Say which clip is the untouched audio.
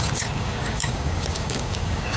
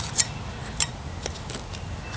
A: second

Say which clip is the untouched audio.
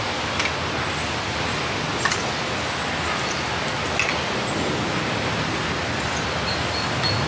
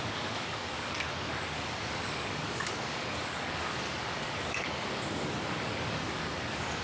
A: first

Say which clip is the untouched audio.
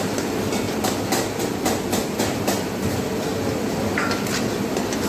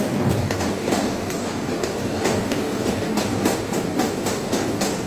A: first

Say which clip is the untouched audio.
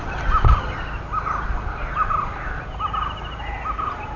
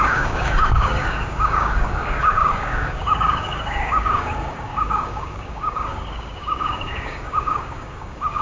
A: first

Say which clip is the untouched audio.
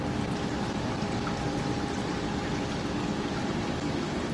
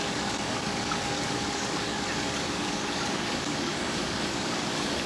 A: first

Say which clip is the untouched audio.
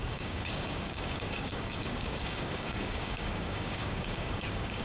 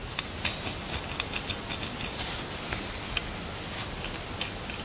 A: second